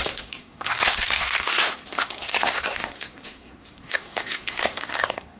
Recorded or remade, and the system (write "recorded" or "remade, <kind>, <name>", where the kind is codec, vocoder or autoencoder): remade, codec, SNAC